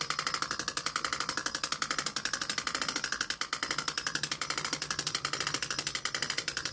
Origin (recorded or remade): recorded